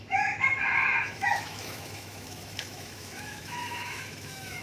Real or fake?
fake